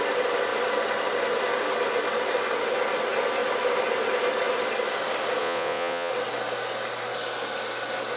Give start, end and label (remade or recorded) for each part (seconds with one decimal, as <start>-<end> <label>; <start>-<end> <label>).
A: 0.0-5.4 recorded; 5.4-6.1 remade; 6.1-8.2 recorded